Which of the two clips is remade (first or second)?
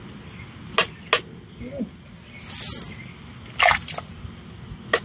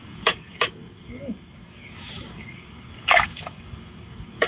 second